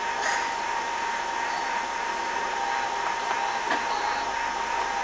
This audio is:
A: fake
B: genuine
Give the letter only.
B